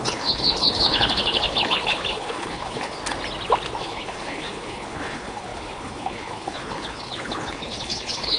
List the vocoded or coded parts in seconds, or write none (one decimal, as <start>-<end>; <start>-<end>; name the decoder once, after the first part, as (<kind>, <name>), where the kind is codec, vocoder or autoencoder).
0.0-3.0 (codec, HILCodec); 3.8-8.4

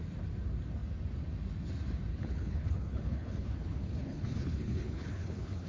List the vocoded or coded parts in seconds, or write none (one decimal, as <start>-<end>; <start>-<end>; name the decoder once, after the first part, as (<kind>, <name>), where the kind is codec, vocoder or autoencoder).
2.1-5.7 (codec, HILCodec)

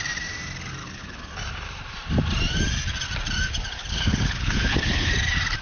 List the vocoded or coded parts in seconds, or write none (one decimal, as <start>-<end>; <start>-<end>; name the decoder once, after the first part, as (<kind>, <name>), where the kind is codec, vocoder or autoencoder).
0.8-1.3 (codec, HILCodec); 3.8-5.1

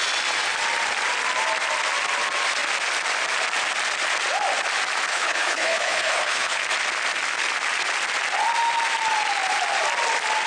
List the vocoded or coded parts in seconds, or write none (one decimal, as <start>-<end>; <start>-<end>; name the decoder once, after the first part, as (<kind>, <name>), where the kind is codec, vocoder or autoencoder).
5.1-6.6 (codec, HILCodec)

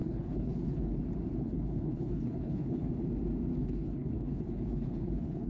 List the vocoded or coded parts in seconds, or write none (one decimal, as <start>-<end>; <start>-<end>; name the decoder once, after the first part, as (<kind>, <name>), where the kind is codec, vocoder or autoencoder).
0.0-1.0 (codec, HILCodec); 1.4-2.9; 3.6-5.5

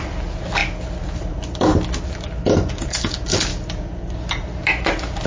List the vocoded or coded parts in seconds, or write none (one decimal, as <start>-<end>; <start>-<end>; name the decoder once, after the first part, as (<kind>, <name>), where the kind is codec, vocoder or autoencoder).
none

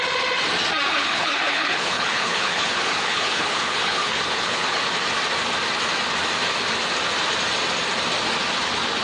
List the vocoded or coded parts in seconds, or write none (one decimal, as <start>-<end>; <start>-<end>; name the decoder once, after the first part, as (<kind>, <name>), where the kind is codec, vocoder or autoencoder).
0.9-4.8 (codec, HILCodec)

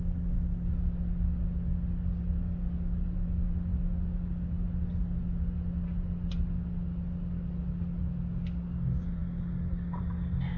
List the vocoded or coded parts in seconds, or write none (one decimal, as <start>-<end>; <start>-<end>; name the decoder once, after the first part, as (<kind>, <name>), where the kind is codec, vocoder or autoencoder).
none